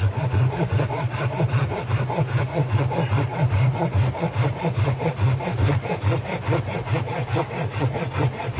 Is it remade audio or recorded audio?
recorded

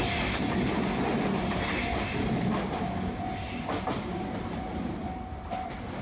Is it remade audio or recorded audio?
recorded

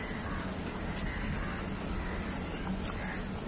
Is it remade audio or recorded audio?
recorded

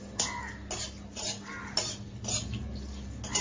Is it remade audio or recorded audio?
recorded